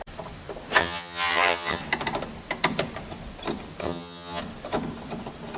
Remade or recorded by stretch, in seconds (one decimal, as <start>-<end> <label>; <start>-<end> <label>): 0.0-0.8 recorded; 0.8-1.8 remade; 1.8-3.8 recorded; 3.8-4.4 remade; 4.4-5.6 recorded